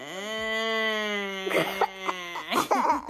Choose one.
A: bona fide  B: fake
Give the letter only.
A